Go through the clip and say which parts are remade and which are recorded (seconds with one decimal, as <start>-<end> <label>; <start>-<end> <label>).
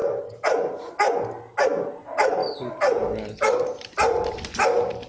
0.0-5.1 recorded